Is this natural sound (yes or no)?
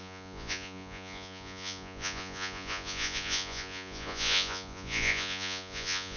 no